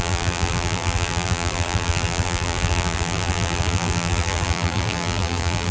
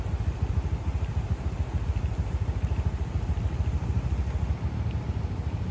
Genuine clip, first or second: second